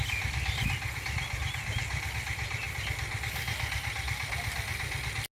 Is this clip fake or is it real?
real